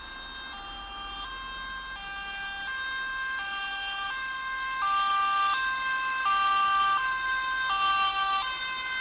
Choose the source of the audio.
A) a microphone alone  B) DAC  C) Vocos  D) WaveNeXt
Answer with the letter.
A